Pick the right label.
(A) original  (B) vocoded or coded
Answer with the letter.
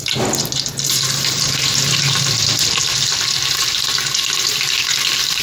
A